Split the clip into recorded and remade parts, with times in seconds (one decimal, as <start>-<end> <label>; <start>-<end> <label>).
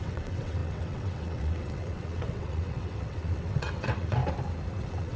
0.0-4.2 remade; 4.2-4.8 recorded; 4.8-5.2 remade